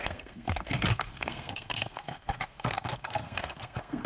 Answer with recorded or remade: remade